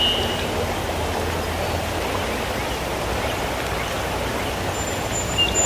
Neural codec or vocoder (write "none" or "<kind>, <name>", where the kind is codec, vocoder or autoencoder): none